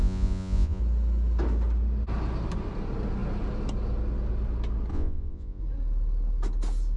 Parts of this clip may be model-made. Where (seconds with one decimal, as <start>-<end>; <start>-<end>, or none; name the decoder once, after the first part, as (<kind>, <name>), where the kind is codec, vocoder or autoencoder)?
0.0-0.8 (vocoder, Vocos); 4.9-5.6